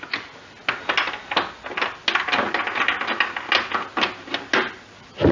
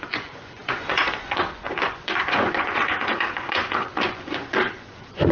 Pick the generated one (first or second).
second